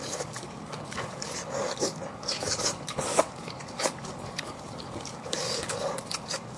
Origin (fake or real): fake